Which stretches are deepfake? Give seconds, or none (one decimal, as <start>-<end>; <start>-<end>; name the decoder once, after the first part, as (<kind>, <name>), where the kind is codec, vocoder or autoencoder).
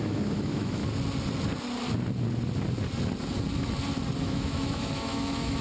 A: 0.0-0.8 (autoencoder, DAC-VAE); 4.2-5.6